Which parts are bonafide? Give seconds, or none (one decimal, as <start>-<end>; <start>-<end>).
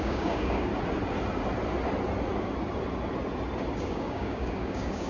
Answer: 0.7-3.8